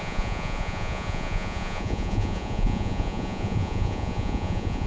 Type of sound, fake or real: fake